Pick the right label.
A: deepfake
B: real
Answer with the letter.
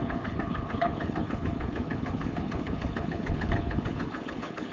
A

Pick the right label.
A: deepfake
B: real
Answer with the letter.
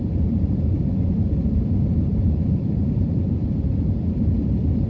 A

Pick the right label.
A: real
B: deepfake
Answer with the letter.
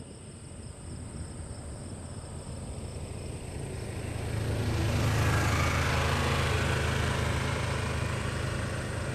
A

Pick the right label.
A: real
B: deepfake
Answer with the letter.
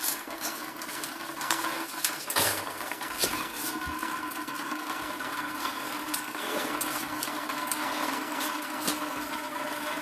B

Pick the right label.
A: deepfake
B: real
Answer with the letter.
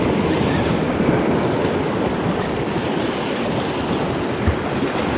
B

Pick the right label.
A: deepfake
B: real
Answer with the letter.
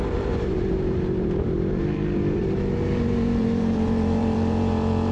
A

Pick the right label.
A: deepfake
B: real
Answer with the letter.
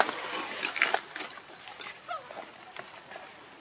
B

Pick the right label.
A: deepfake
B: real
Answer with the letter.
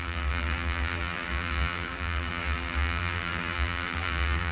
A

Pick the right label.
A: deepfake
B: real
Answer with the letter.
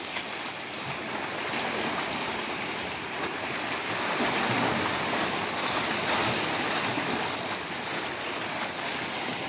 B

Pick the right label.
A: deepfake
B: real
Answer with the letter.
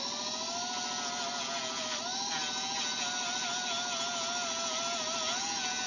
B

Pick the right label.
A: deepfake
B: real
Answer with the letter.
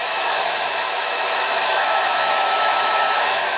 A